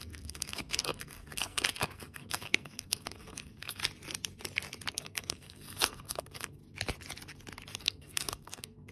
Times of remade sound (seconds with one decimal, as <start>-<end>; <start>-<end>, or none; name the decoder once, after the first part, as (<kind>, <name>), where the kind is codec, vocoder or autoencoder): 0.0-3.8 (codec, SNAC); 4.9-6.6; 7.8-8.9